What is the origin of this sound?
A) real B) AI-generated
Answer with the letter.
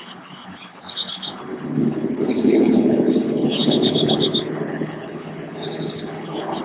B